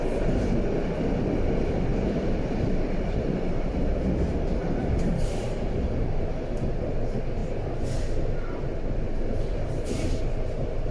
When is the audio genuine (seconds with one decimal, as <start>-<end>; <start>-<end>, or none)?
0.0-1.9; 6.0-10.9